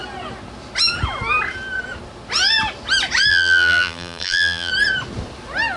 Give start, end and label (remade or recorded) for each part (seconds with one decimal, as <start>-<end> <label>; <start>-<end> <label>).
0.0-3.3 recorded; 3.3-4.7 remade; 4.7-5.8 recorded